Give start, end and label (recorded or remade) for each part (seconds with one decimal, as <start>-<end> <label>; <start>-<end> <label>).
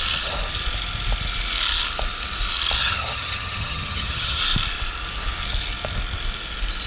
0.0-2.8 recorded; 2.8-4.4 remade; 4.4-6.9 recorded